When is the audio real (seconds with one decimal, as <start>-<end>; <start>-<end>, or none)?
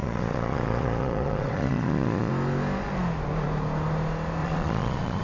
2.3-4.4